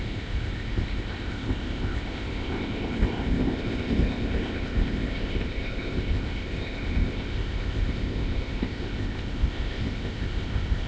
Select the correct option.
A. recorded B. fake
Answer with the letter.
B